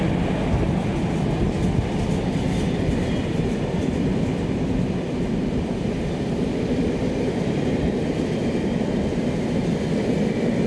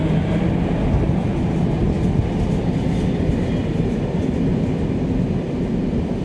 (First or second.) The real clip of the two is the second